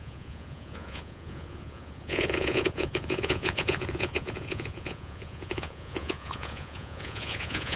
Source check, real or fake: fake